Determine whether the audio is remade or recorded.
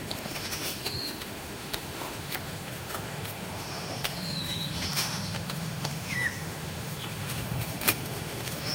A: remade